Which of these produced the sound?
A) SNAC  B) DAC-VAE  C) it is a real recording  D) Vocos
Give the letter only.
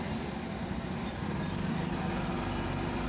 C